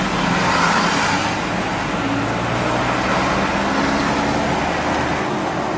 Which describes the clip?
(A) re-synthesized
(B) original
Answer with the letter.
B